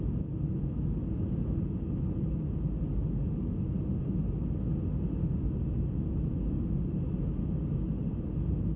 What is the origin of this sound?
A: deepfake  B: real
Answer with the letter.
B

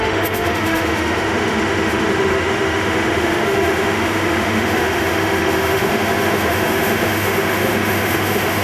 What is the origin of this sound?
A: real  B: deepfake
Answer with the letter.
B